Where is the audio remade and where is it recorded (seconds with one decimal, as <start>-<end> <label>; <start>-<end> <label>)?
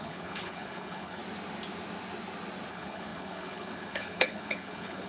0.0-1.2 remade; 1.2-2.7 recorded; 2.7-5.1 remade